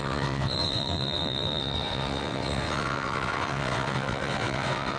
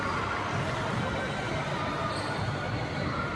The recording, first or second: second